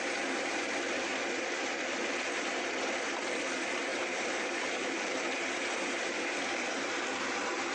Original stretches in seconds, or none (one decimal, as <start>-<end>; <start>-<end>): 0.0-3.9; 6.1-7.7